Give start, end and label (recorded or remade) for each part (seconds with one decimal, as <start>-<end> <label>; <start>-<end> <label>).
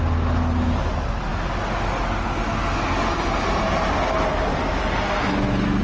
0.0-5.8 recorded